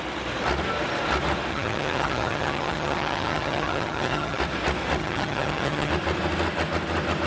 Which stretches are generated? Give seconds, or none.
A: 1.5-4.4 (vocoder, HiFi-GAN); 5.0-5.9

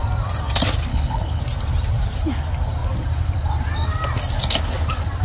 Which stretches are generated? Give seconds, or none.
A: 0.9-1.4 (codec, HILCodec)

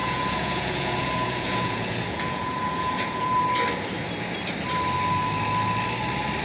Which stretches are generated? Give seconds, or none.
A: 0.0-3.4 (vocoder, Vocos)

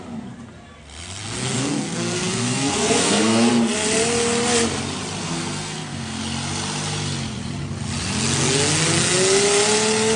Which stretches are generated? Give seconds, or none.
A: 1.4-3.5 (codec, SNAC); 5.2-6.2

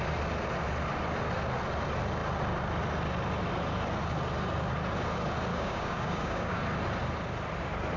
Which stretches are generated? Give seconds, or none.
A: 5.5-6.6 (codec, DAC)

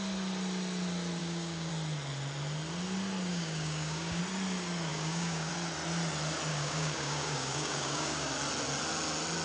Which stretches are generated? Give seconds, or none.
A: 1.2-1.7 (codec, DAC); 3.3-4.2; 4.9-5.5; 6.5-8.3

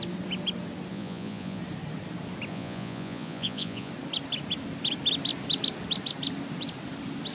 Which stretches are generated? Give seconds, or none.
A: 0.9-1.6 (vocoder, Vocos); 2.5-3.9